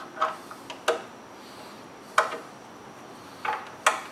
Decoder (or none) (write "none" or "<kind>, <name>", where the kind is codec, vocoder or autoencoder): none